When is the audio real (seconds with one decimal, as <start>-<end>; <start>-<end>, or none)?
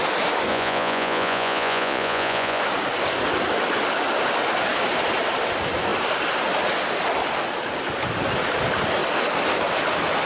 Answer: 0.0-0.5; 2.6-10.3